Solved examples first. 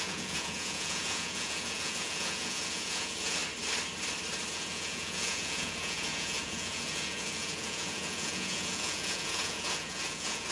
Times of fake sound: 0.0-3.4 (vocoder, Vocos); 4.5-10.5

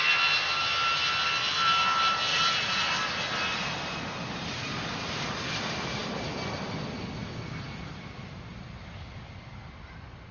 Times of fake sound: 2.3-2.9 (vocoder, Vocos)

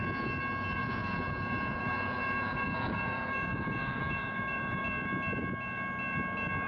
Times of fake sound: 0.8-4.8 (vocoder, Vocos)

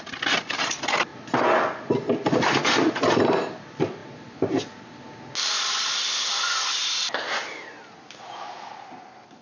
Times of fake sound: none

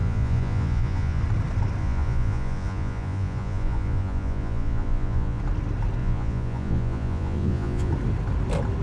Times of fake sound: 0.0-1.2 (vocoder, Vocos); 1.8-5.4; 6.0-7.9

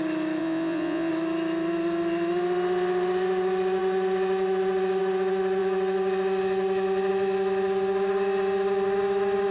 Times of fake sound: 0.4-1.1 (vocoder, Vocos)

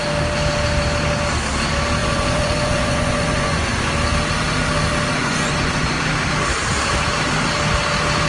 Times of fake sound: 2.0-3.9 (vocoder, Vocos); 5.2-5.9

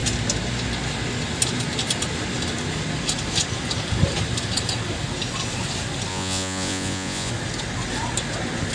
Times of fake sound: 6.1-7.3 (vocoder, Vocos)